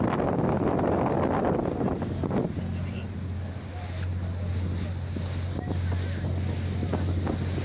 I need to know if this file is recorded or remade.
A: recorded